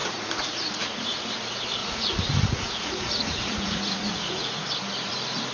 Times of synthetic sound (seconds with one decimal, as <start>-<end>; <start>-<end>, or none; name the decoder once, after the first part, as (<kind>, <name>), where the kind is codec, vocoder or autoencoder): 0.0-1.3 (vocoder, Vocos); 1.8-4.7